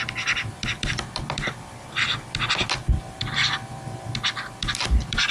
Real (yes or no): no